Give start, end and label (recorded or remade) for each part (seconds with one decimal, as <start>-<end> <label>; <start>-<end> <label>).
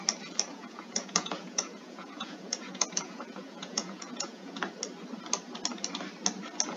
0.0-0.5 recorded; 0.5-4.5 remade; 4.5-6.8 recorded